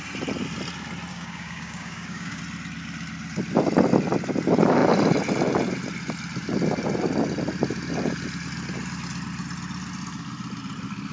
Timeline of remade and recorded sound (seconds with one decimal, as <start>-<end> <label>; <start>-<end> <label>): 0.0-1.1 recorded; 1.1-2.4 remade; 2.4-11.1 recorded